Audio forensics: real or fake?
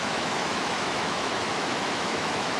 fake